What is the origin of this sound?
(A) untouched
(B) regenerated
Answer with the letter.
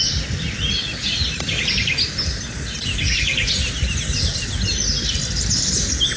A